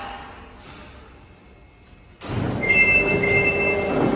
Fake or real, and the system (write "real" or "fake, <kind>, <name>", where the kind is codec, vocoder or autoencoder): real